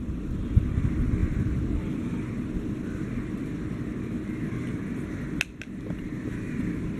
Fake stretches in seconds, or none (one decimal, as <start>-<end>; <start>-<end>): none